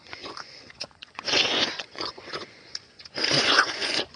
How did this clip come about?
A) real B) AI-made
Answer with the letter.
B